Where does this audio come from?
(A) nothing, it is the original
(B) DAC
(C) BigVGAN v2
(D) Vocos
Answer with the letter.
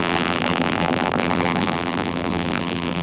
C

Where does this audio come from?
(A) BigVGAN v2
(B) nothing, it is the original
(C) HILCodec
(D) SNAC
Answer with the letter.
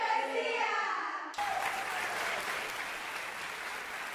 B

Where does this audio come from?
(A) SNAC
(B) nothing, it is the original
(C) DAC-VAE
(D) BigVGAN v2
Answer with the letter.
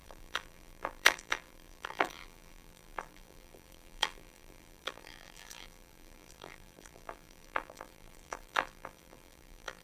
D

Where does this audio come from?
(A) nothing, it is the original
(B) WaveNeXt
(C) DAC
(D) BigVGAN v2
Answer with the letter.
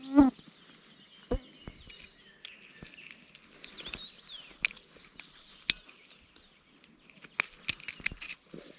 A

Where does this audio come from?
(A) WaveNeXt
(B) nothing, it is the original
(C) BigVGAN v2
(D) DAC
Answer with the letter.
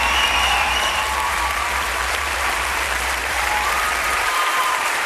C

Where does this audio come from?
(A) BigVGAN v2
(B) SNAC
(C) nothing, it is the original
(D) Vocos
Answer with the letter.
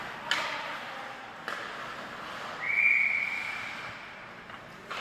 C